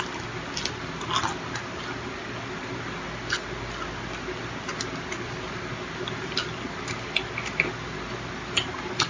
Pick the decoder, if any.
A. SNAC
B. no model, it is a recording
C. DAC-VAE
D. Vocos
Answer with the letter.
B